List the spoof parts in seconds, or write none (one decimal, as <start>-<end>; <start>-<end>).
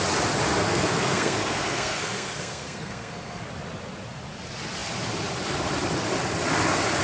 0.6-3.4